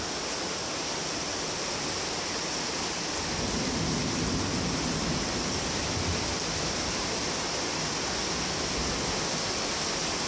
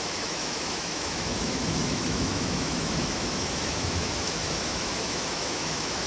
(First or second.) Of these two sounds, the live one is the first